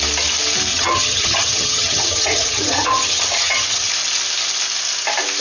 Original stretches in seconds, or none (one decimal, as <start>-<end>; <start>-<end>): 0.0-0.7; 3.9-5.4

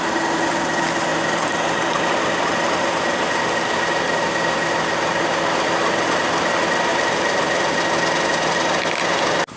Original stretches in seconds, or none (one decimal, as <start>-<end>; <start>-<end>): 0.0-6.9; 7.8-9.6

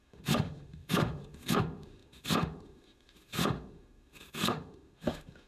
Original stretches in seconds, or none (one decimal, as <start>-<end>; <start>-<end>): none

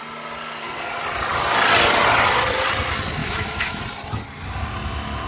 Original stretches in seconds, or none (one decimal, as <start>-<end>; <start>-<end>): 0.0-3.2; 3.8-5.3

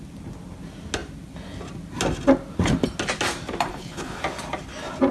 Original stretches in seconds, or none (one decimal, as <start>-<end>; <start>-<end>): 0.0-3.7; 4.2-5.1

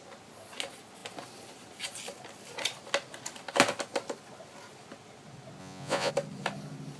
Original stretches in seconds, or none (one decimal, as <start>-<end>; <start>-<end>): 0.0-5.6; 6.1-7.0